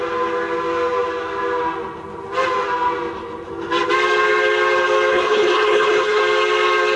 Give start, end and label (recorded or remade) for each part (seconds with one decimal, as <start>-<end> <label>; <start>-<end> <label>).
0.0-5.1 recorded; 5.1-6.2 remade; 6.2-7.0 recorded